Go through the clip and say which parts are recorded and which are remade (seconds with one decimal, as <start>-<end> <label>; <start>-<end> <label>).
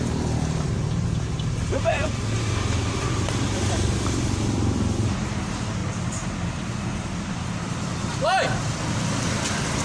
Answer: 0.0-5.8 remade; 5.8-9.8 recorded